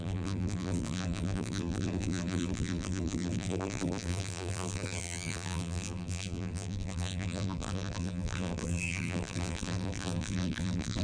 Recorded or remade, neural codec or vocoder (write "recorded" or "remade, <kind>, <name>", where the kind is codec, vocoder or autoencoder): remade, vocoder, BigVGAN v2